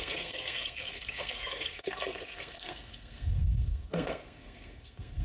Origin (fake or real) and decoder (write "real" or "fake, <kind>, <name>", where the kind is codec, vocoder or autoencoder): fake, codec, SNAC